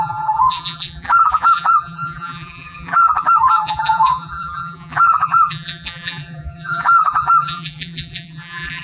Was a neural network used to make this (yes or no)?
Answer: yes